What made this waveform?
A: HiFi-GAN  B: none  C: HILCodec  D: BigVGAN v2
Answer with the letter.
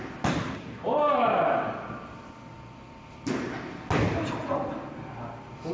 B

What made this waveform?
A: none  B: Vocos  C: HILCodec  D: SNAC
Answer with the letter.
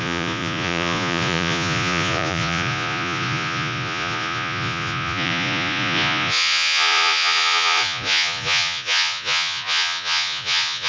B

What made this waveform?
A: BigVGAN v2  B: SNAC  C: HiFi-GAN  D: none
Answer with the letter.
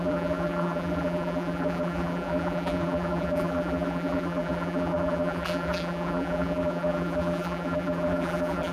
A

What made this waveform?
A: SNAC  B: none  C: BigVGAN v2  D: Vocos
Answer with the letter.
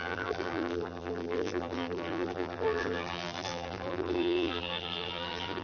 C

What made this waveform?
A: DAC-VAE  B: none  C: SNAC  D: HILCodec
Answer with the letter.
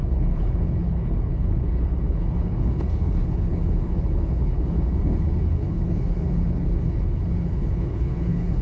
D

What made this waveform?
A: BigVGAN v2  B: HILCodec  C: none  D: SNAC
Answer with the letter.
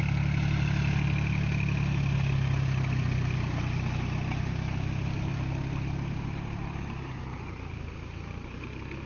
C